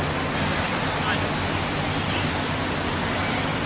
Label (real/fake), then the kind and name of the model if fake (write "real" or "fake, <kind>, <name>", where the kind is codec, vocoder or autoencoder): real